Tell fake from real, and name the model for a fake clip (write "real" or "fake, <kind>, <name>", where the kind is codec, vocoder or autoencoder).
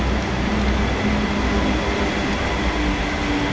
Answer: real